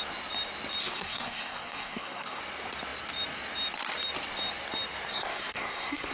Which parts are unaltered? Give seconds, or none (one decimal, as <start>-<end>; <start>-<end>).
0.0-0.8; 2.4-5.1